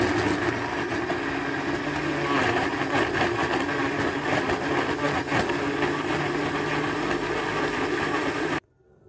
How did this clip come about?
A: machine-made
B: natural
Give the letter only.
B